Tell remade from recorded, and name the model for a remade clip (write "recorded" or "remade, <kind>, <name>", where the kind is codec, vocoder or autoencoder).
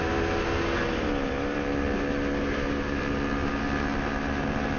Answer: recorded